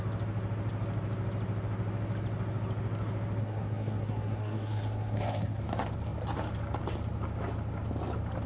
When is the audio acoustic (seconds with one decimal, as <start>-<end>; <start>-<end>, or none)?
0.0-3.4; 5.6-8.5

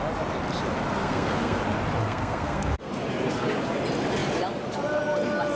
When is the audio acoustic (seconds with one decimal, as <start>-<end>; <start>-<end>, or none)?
0.0-1.0; 1.6-2.0; 2.9-5.6

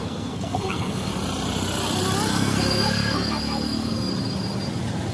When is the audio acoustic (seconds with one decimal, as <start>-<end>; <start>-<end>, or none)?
1.1-2.3; 4.1-5.1

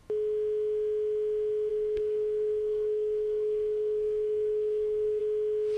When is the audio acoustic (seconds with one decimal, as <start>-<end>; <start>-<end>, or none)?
0.0-1.7; 5.2-5.8